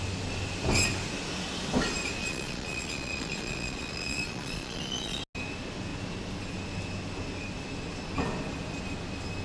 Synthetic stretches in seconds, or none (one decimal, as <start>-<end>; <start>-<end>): 2.2-5.2